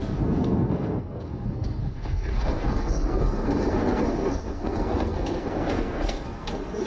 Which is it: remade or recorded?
remade